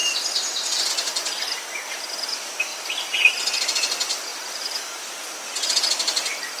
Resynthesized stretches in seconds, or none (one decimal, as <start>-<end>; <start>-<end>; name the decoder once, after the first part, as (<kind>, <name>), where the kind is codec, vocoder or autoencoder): 4.3-5.2 (vocoder, BigVGAN v2)